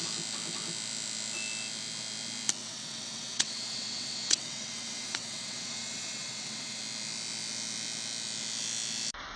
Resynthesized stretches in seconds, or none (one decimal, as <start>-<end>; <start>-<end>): 2.6-6.8